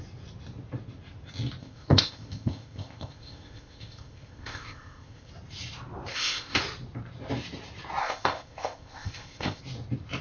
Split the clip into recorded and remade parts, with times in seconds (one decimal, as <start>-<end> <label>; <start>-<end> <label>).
0.0-1.6 recorded; 1.6-5.3 remade; 5.3-6.1 recorded; 6.1-6.6 remade; 6.6-8.0 recorded; 8.0-9.6 remade; 9.6-10.2 recorded